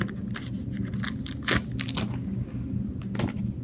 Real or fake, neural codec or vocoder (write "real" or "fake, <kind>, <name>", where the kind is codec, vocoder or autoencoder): real